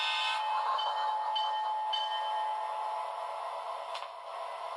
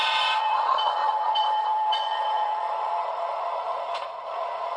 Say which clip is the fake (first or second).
second